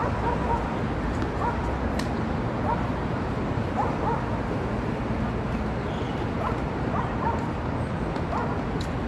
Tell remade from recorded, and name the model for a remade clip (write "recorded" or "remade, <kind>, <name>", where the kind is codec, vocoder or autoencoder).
recorded